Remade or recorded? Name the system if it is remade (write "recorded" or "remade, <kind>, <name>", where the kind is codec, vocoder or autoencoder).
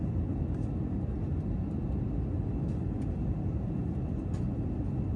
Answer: recorded